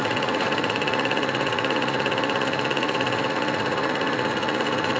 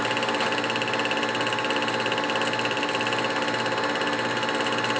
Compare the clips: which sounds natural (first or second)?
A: second